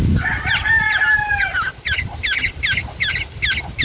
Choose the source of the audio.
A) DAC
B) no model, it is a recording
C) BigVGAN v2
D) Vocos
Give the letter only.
B